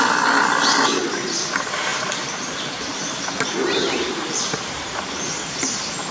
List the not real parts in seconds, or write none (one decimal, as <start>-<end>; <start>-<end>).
1.9-5.6